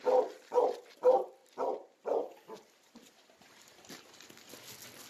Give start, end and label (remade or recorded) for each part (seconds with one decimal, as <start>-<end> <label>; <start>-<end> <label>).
0.0-1.4 recorded; 1.4-4.5 remade; 4.5-5.1 recorded